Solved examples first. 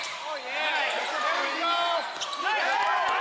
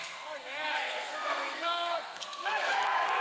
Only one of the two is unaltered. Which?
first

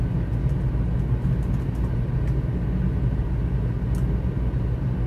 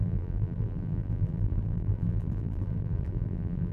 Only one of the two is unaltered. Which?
first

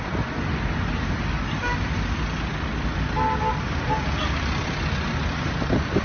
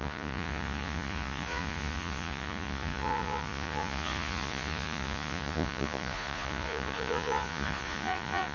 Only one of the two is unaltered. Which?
first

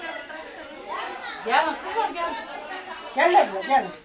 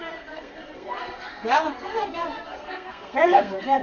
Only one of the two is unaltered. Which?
first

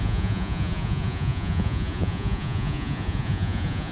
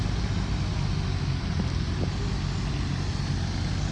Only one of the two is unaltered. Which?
second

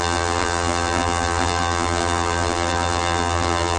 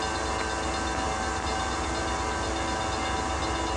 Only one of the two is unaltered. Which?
second